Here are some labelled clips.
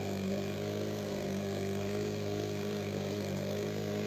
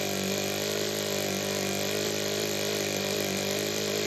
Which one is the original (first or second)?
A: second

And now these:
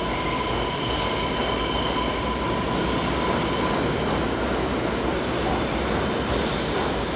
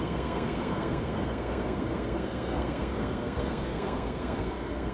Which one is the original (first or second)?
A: first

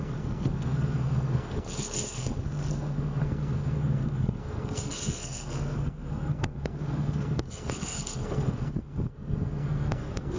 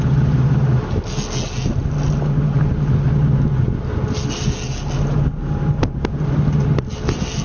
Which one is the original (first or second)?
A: second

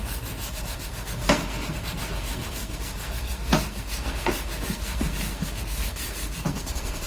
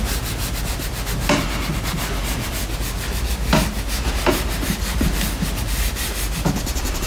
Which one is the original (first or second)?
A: second